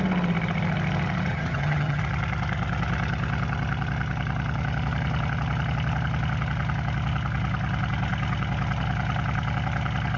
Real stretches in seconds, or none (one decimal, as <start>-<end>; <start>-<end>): 0.0-1.3; 2.0-10.2